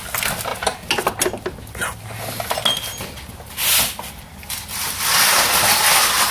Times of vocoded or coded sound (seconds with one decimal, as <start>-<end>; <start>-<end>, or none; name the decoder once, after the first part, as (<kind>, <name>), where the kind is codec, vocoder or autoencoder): none